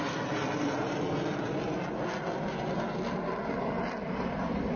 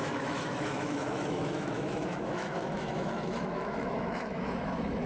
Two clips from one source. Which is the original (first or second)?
first